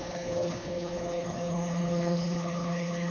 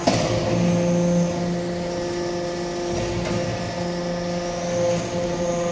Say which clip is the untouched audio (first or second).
second